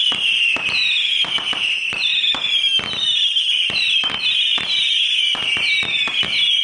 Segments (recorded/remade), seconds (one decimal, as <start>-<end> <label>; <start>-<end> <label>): 0.0-1.0 recorded; 1.0-2.1 remade; 2.1-3.6 recorded; 3.6-6.6 remade